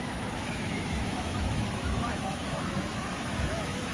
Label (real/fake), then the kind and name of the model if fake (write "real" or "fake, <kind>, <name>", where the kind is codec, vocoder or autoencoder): fake, autoencoder, DAC-VAE